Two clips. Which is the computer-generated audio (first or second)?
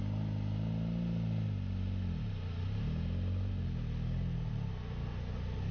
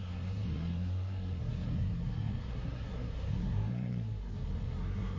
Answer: second